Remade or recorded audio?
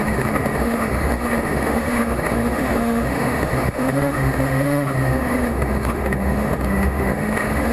remade